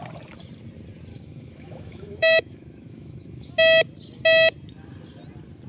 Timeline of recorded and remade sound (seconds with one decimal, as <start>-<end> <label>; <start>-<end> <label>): 0.0-1.1 recorded; 1.1-3.5 remade; 3.5-5.7 recorded

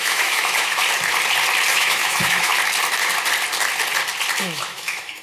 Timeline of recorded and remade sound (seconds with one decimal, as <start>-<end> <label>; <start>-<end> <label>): 0.0-0.8 remade; 0.8-1.7 recorded; 1.7-2.5 remade; 2.5-4.4 recorded; 4.4-5.2 remade